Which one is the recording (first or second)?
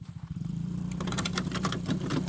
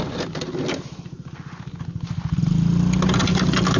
second